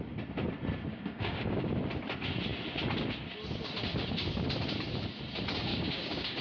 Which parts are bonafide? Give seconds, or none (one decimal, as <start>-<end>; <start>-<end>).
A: 0.0-0.9; 1.7-5.7

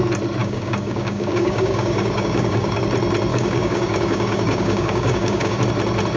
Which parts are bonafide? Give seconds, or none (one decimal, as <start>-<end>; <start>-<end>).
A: 0.0-0.4; 2.8-3.3; 5.6-6.2

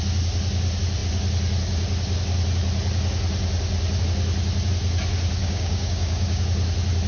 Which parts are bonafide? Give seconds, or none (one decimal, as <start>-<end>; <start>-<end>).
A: 0.0-5.4; 6.4-7.1

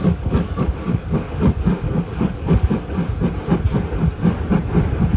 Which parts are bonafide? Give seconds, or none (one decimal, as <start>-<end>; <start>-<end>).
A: 2.7-5.2

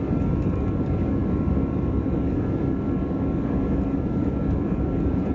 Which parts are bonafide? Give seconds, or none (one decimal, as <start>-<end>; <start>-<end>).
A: none

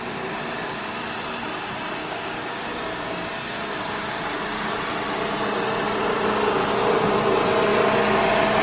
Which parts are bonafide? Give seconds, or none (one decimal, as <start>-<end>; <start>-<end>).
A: 0.0-2.0; 3.3-8.6

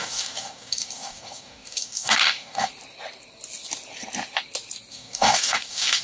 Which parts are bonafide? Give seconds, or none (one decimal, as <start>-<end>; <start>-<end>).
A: 2.7-4.9

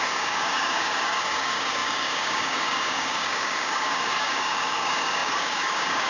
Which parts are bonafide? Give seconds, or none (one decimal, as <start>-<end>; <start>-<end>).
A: none